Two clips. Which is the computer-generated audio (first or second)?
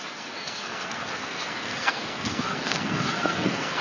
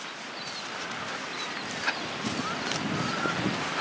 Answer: first